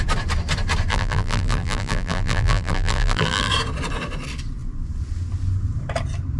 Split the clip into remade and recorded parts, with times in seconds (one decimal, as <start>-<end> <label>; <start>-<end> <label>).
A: 0.0-0.9 recorded; 0.9-3.5 remade; 3.5-6.4 recorded

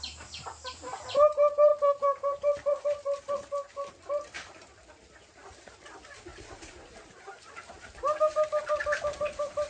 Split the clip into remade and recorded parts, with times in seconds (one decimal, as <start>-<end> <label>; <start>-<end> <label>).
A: 0.0-1.7 remade; 1.7-5.3 recorded; 5.3-9.7 remade

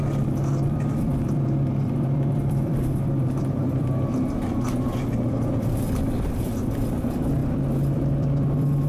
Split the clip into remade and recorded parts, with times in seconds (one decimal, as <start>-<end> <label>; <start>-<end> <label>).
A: 0.0-8.9 remade